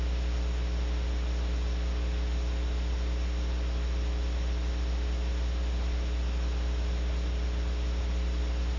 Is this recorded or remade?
recorded